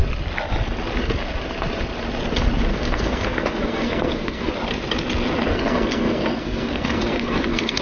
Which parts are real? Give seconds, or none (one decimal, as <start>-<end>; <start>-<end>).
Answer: 0.0-2.7; 4.5-5.5